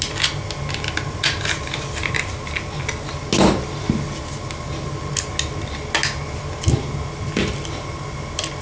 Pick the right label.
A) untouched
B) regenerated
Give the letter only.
A